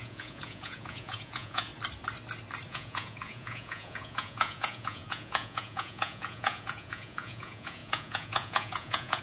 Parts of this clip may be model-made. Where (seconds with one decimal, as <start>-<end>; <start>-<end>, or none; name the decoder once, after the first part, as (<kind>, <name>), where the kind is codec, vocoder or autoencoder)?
0.0-1.7 (vocoder, Vocos); 2.7-9.2